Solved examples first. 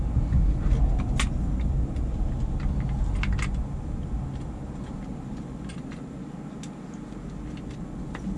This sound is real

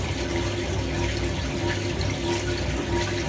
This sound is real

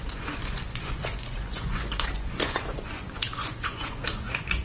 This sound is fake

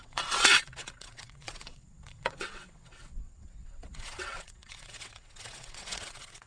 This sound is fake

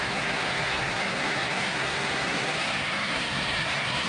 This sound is fake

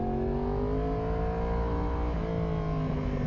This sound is real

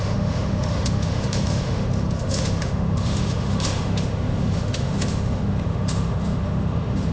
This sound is fake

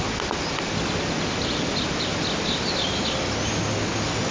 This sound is real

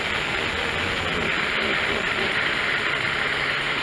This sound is real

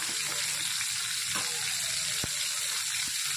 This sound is real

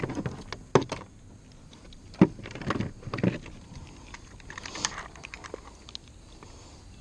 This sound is real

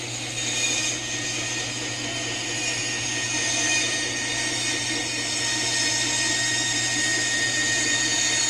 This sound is real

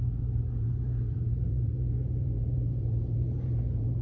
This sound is fake